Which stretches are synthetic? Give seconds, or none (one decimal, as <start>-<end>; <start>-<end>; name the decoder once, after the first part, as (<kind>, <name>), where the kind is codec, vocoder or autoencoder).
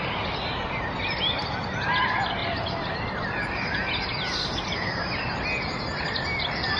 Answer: none